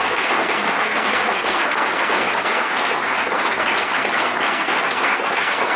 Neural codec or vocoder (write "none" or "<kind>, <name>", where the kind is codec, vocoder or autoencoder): codec, SNAC